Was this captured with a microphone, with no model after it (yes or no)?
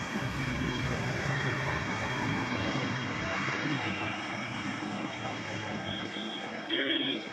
no